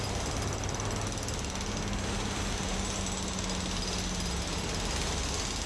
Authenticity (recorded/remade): recorded